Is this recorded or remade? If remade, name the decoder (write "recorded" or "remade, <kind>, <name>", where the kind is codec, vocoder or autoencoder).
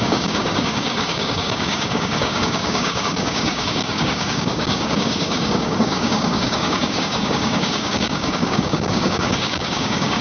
remade, codec, DAC